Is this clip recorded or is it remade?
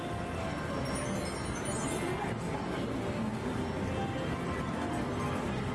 recorded